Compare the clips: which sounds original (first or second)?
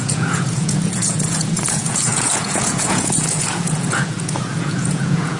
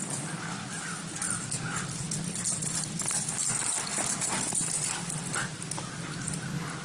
second